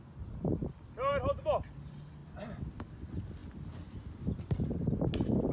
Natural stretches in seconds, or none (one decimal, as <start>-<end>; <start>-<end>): 0.0-5.5